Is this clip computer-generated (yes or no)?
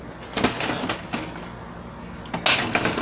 no